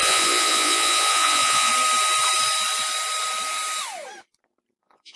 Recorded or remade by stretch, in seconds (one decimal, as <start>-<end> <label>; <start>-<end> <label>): 0.0-1.7 remade; 1.7-4.8 recorded; 4.8-5.2 remade